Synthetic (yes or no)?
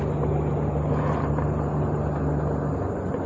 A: no